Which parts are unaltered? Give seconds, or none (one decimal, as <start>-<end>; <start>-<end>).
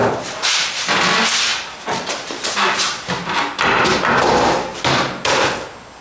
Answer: 0.5-1.5; 2.8-6.0